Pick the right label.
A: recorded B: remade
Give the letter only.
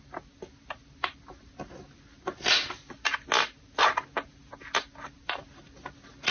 A